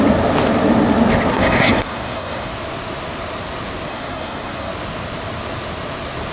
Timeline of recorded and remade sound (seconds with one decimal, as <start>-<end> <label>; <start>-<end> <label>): 0.0-1.3 recorded; 1.3-2.5 remade; 2.5-3.9 recorded; 3.9-4.7 remade; 4.7-6.3 recorded